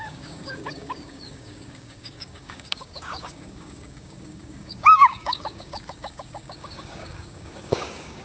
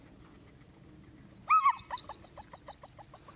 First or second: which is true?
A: second